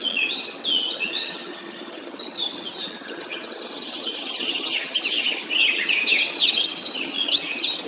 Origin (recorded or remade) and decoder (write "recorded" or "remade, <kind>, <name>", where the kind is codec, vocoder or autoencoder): remade, vocoder, HiFi-GAN